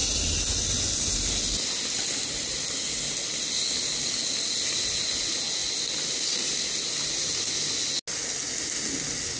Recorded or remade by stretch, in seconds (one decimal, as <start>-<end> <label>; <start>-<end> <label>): 0.0-9.4 recorded